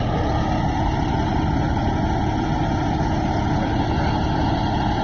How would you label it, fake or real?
real